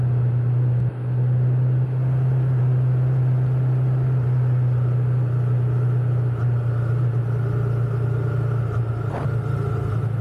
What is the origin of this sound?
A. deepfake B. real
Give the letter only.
B